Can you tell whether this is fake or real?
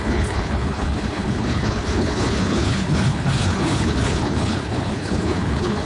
fake